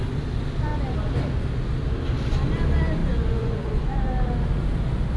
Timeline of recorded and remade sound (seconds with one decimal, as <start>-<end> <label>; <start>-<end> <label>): 0.0-3.0 recorded; 3.0-4.1 remade; 4.1-5.2 recorded